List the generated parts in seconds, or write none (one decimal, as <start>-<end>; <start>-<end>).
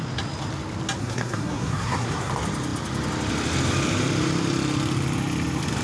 1.0-2.3